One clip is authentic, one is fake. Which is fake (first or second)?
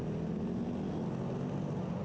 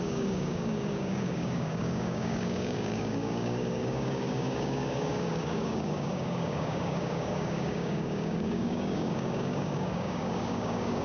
second